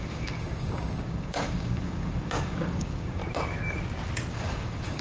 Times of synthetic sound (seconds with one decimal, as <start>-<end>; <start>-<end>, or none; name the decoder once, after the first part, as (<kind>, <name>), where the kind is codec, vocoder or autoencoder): 0.0-3.2 (codec, DAC); 4.3-5.0